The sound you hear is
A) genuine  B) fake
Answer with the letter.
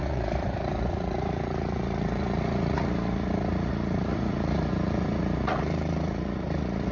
B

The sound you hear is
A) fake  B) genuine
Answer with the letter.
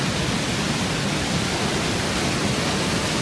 B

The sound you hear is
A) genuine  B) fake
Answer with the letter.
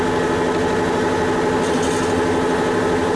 A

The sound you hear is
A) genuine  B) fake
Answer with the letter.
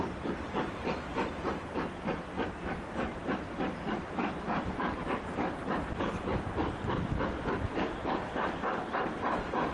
B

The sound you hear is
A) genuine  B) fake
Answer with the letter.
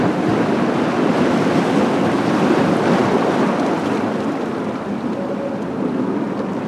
A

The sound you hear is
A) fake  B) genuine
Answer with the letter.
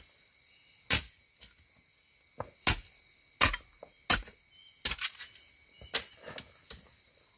B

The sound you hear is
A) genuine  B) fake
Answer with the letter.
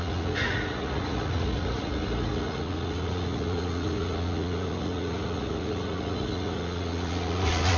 B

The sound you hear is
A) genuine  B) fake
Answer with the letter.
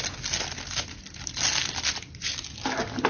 A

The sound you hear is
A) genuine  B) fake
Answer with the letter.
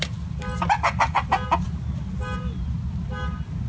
A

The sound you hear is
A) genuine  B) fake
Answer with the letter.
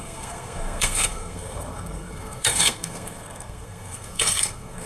B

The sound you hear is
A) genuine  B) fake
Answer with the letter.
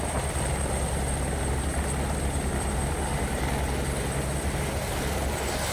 A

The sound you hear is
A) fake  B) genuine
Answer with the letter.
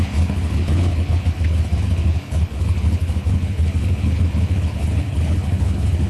A